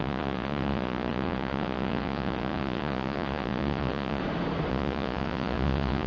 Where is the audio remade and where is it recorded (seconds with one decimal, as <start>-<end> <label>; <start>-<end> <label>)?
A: 0.0-4.2 remade; 4.2-4.7 recorded; 4.7-6.1 remade